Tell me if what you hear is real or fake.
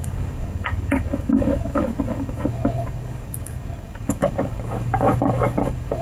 fake